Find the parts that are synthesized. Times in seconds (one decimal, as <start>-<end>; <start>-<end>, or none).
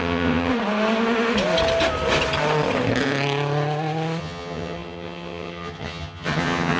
0.0-0.5; 4.2-6.8